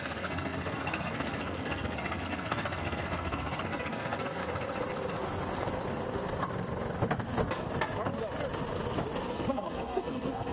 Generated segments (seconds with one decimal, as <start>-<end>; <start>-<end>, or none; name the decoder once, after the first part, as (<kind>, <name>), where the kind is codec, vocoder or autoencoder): 0.0-4.4 (codec, SNAC); 9.3-10.5